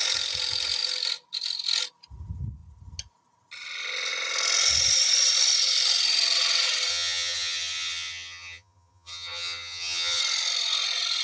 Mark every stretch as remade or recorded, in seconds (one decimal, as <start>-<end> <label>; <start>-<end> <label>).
0.0-6.9 recorded; 6.9-10.2 remade; 10.2-11.2 recorded

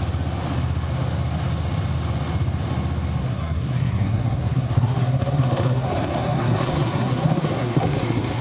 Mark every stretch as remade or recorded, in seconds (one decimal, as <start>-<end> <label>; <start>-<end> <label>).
0.0-3.2 recorded; 3.2-8.4 remade